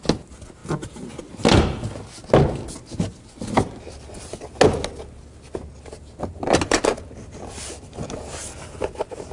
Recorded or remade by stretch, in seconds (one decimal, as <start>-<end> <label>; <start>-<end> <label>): 0.0-9.3 recorded